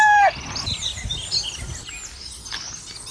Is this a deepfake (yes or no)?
no